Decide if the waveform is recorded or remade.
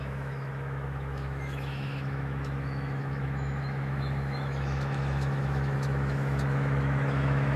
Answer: remade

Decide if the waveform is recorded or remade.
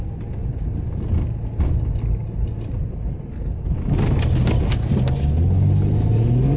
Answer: recorded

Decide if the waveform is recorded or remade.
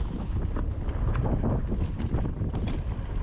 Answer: recorded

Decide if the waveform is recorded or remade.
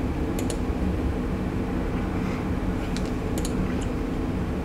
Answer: recorded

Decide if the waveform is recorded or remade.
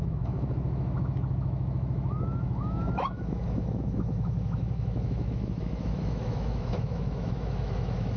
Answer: remade